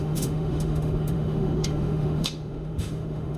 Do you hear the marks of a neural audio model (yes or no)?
yes